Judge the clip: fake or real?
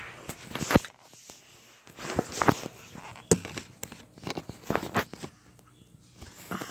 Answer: real